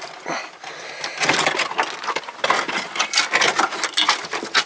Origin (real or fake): real